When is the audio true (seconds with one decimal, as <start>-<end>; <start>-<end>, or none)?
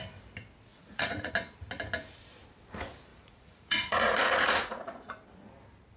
0.0-0.7; 1.3-3.1; 5.1-6.0